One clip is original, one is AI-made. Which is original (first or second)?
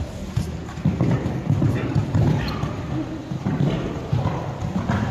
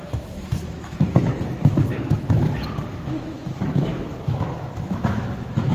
first